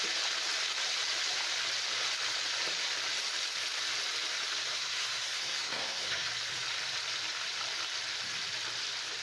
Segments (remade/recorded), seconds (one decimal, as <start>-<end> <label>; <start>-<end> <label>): 0.0-4.7 recorded; 4.7-6.3 remade; 6.3-9.2 recorded